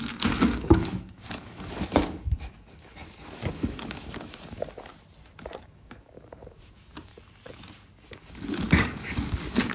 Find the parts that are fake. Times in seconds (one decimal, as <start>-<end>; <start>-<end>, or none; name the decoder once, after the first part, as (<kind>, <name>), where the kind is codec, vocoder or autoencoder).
0.0-4.9 (codec, DAC); 5.6-7.1; 8.2-9.7

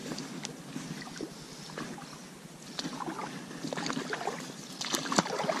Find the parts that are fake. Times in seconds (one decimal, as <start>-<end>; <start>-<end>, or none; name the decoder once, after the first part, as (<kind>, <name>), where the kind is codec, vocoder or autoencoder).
0.0-0.5 (codec, DAC)

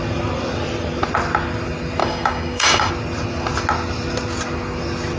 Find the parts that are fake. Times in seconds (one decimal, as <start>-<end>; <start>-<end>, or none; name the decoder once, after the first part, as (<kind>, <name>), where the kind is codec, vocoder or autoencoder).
2.0-2.9 (codec, DAC)

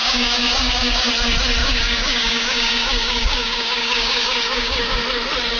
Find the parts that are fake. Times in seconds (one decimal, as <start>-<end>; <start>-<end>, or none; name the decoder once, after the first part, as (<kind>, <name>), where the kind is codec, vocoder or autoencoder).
0.0-1.1 (codec, DAC); 1.6-5.0

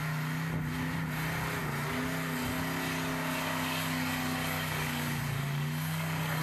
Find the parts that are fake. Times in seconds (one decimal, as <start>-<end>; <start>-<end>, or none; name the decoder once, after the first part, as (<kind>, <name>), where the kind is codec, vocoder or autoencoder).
3.1-6.4 (codec, DAC)

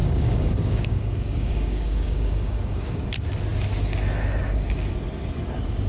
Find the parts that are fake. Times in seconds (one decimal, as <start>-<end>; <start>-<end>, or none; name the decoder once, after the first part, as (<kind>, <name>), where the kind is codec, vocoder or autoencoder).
0.0-3.0 (codec, DAC)

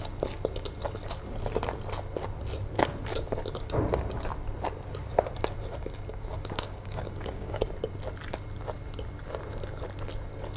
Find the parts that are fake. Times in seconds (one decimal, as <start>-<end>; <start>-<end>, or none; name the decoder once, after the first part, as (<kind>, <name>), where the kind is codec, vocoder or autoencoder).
6.1-7.6 (codec, DAC)

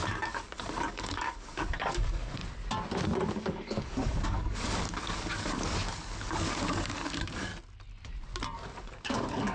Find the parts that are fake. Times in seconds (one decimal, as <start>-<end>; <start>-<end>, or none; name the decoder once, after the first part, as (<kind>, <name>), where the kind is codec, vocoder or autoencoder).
0.0-2.4 (codec, DAC); 3.3-7.5; 8.8-9.5